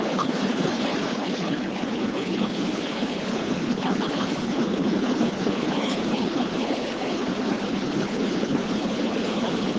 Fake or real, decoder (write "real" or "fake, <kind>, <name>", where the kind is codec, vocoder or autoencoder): fake, codec, HILCodec